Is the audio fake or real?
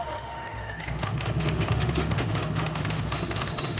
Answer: fake